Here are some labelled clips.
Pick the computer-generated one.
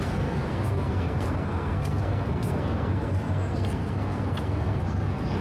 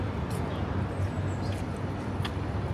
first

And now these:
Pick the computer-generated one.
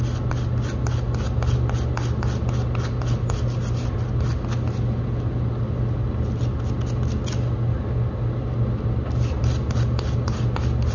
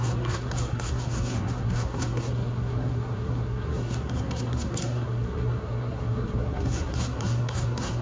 second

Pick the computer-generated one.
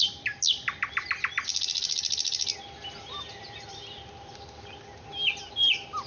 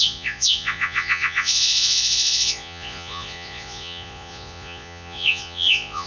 second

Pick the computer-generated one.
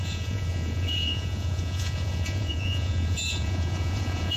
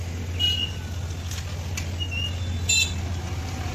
first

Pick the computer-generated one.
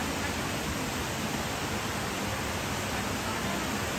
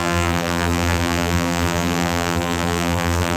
second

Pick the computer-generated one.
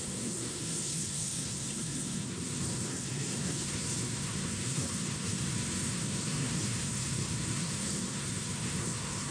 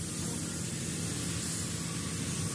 first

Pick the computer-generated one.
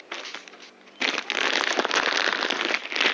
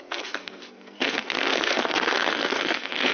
second